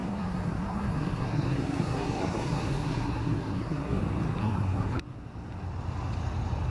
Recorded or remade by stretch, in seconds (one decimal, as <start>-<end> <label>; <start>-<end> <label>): 0.0-4.0 remade; 4.0-4.4 recorded; 4.4-5.0 remade; 5.0-6.7 recorded